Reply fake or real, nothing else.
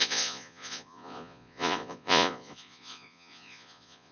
fake